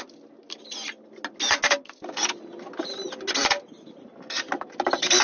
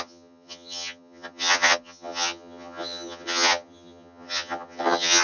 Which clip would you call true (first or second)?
first